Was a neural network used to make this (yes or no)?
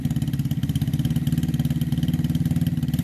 no